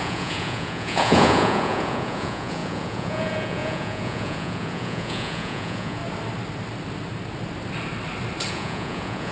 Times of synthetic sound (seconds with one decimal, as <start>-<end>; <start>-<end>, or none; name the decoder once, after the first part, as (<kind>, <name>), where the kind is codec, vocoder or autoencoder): 0.0-6.0 (vocoder, Vocos); 8.5-9.3